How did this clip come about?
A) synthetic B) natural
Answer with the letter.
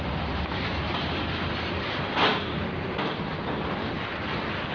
B